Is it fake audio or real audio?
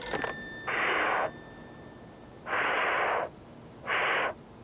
real